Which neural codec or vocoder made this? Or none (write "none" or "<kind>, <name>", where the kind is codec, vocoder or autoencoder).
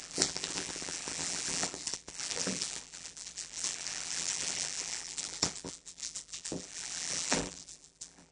vocoder, BigVGAN v2